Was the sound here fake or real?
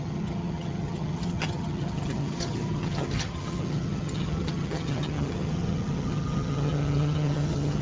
fake